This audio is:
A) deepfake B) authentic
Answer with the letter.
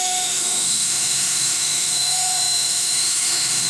A